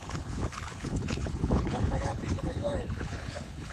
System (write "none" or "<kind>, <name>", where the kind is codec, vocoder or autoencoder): codec, HILCodec